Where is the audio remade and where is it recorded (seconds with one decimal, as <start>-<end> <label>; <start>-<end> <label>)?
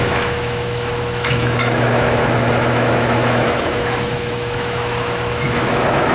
0.0-2.2 remade; 2.2-2.7 recorded; 2.7-6.1 remade